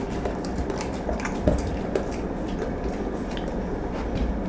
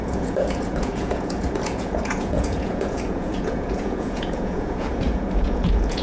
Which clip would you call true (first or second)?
first